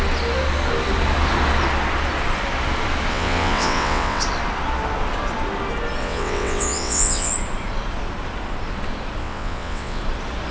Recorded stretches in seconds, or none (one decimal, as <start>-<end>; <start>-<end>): 0.0-3.1; 4.2-6.0; 7.3-9.2; 10.0-10.5